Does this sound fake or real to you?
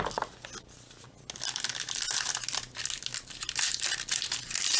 real